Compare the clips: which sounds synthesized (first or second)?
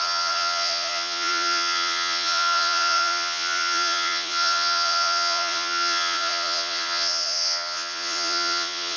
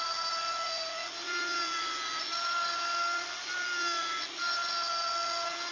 first